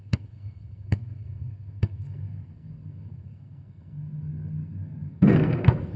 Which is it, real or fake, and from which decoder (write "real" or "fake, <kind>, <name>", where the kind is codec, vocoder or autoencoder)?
fake, codec, SNAC